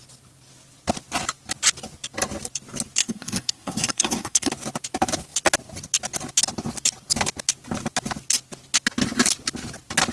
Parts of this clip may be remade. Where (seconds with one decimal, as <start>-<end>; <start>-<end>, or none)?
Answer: 3.0-4.5